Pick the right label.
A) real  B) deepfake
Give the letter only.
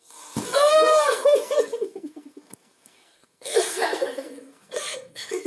B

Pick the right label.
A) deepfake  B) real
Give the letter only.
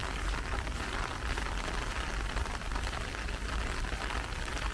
B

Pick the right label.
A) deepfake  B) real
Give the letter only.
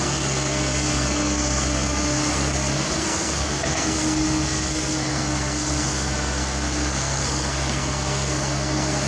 A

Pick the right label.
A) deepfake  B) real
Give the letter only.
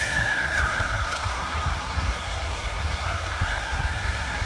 A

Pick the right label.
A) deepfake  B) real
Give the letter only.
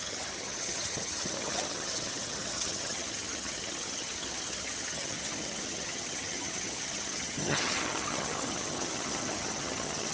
A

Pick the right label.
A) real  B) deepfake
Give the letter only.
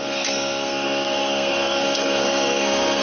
B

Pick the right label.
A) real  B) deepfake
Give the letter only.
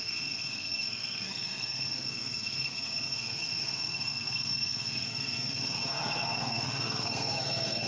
B